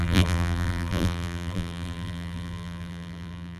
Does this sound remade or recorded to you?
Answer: remade